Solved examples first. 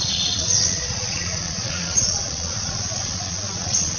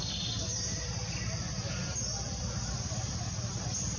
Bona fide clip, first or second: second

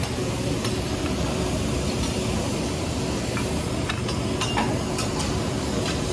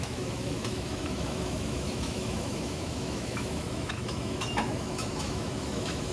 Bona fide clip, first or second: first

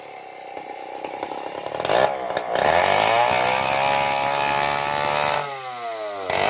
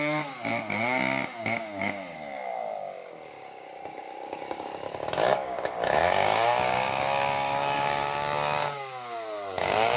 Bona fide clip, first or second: first